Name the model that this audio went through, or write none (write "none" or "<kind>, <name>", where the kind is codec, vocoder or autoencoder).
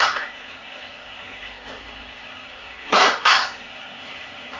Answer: codec, SNAC